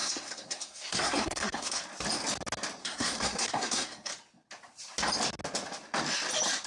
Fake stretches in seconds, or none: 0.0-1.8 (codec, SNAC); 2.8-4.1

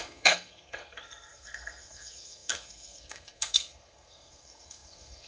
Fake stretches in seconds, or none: 0.0-5.3 (codec, SNAC)

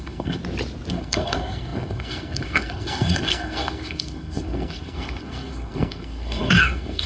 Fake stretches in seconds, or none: 0.0-0.4 (codec, SNAC); 0.9-7.1

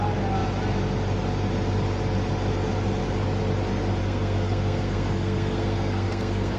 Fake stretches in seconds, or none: 4.0-6.6 (codec, SNAC)

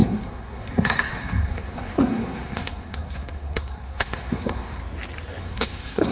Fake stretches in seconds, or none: 0.0-4.8 (codec, SNAC); 5.4-6.1

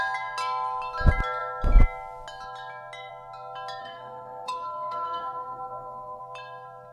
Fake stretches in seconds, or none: 3.8-6.2 (codec, SNAC)

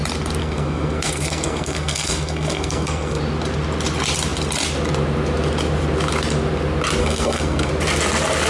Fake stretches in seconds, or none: 0.4-3.2 (codec, SNAC); 7.0-7.7